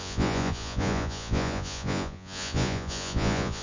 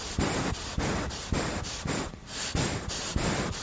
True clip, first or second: second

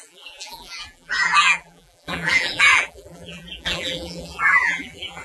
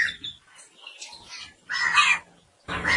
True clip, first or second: second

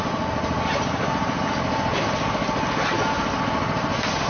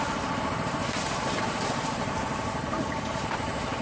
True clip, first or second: first